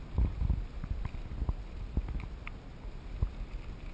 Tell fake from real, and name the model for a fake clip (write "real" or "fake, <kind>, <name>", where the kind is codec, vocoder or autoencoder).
real